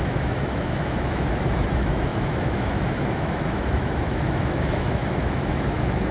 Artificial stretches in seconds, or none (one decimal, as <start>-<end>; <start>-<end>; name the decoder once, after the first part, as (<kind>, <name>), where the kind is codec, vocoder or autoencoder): 0.0-6.1 (autoencoder, DAC-VAE)